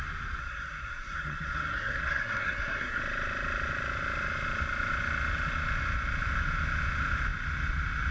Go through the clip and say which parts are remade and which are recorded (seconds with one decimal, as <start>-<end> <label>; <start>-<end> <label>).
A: 0.0-0.4 recorded; 0.4-3.0 remade; 3.0-8.1 recorded